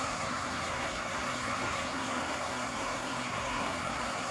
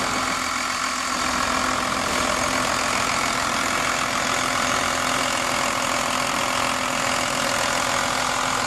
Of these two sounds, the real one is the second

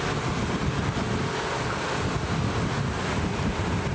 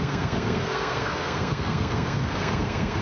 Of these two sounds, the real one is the first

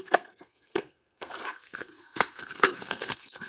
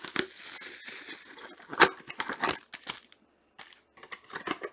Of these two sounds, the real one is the second